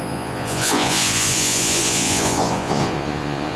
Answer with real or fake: fake